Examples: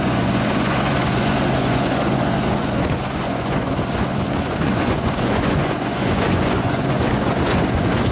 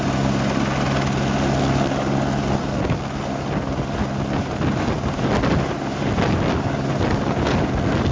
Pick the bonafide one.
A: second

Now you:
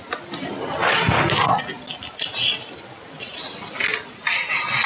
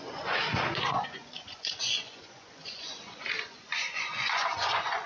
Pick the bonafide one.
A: first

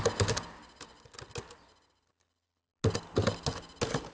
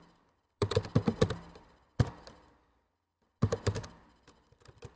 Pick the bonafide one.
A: first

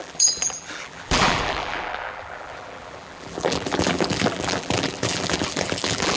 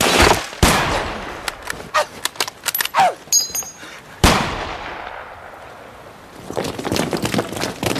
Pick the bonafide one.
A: second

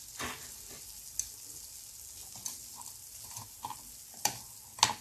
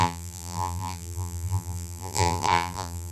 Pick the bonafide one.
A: first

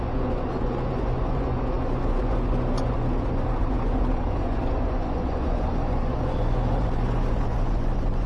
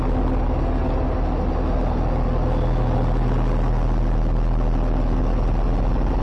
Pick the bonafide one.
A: second